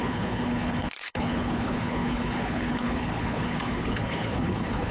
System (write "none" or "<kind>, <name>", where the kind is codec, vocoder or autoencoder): codec, HILCodec